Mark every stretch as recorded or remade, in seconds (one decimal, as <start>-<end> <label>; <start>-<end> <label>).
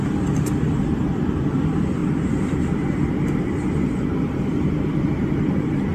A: 0.0-5.9 recorded